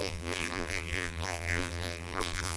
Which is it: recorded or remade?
remade